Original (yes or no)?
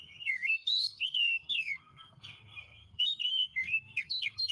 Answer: no